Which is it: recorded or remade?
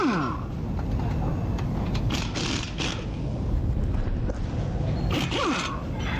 recorded